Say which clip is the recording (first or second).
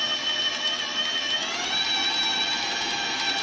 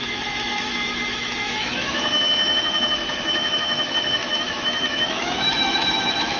first